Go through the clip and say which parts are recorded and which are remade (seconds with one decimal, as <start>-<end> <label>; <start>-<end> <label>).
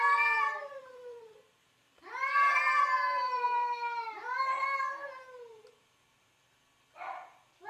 0.0-0.6 recorded; 0.6-4.4 remade; 4.4-7.7 recorded